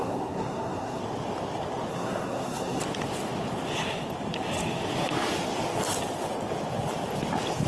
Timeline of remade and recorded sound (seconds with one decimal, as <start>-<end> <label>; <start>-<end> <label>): 0.0-1.0 remade; 1.0-1.9 recorded; 1.9-2.8 remade; 2.8-7.7 recorded